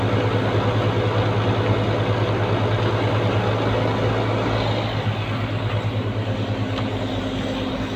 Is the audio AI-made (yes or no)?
no